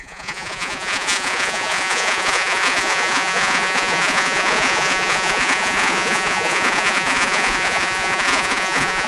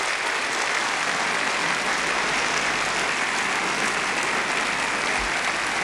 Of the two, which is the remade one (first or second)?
first